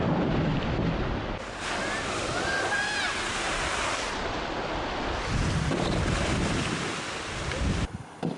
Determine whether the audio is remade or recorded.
recorded